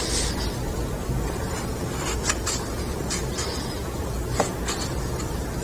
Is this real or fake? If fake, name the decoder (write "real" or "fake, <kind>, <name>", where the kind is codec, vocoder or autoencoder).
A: real